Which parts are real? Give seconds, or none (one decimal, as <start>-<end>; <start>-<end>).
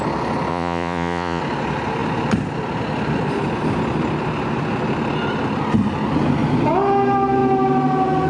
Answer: 0.0-0.5; 1.4-8.3